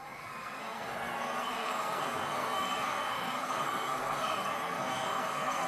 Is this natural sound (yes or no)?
no